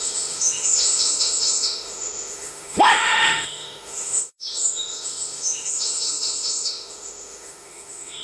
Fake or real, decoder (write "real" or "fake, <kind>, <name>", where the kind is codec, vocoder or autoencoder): fake, autoencoder, DAC-VAE